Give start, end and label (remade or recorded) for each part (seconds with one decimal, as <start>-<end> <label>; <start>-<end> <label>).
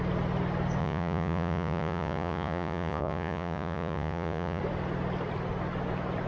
0.0-0.8 recorded; 0.8-4.6 remade; 4.6-6.3 recorded